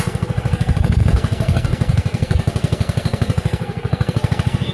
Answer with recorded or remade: remade